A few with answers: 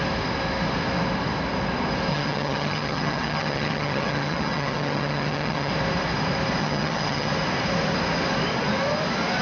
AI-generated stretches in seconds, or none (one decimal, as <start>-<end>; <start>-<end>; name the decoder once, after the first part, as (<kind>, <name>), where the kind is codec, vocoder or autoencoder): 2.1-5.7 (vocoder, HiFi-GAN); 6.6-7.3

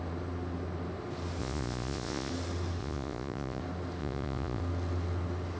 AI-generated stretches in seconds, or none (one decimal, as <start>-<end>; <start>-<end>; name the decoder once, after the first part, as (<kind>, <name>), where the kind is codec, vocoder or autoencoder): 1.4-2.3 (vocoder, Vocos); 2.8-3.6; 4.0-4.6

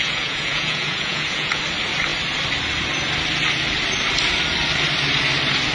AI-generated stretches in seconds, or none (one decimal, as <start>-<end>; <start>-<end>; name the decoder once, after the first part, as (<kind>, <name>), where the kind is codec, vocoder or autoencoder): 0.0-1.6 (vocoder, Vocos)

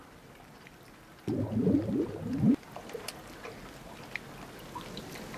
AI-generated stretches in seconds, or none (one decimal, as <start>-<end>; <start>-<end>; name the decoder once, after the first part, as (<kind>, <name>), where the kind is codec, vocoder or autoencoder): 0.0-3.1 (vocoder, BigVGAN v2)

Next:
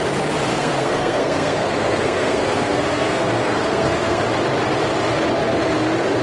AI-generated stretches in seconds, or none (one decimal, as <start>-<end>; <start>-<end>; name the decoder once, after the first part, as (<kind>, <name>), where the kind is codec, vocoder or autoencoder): 0.5-4.2 (codec, SNAC)